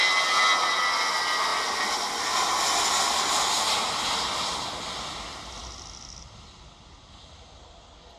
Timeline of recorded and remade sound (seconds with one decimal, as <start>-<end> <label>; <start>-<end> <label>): 0.0-8.2 recorded